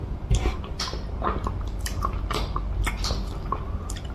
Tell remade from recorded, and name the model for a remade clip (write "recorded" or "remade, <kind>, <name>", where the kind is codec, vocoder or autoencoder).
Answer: recorded